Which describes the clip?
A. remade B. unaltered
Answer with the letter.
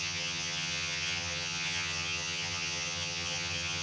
A